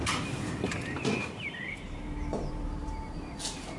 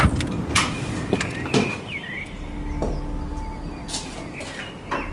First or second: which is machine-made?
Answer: first